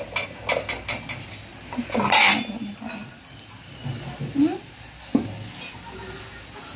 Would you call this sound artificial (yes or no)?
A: no